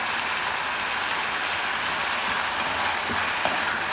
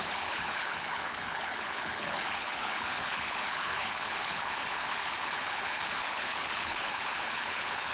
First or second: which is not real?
second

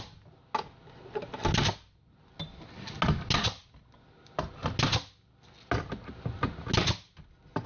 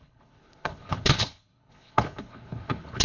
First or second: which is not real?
second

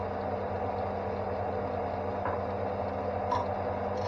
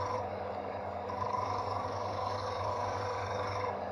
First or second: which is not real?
second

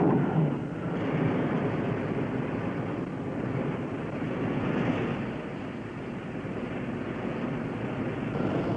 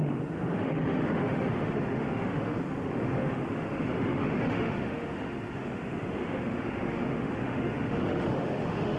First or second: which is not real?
second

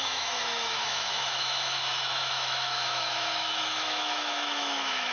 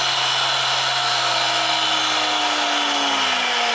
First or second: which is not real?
first